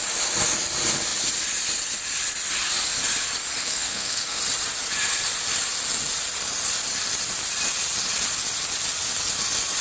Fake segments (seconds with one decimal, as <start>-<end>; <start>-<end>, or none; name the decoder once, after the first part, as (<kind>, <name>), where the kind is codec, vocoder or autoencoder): 3.6-4.4 (codec, SNAC)